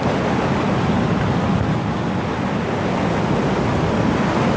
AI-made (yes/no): no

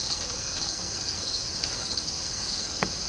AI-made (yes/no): yes